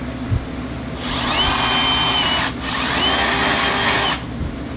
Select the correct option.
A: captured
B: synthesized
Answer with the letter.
A